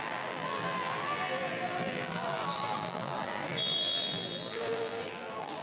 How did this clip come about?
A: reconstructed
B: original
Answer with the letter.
A